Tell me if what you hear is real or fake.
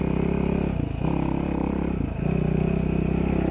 real